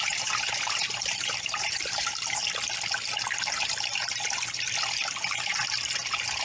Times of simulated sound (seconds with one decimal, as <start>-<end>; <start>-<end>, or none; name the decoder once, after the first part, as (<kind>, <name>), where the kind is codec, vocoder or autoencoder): 0.0-2.4 (vocoder, BigVGAN v2)